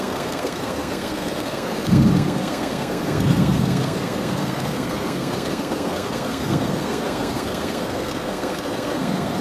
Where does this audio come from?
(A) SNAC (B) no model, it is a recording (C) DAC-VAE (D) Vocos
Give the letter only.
A